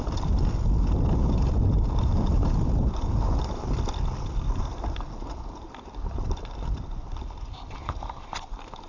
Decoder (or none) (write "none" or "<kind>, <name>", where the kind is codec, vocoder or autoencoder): none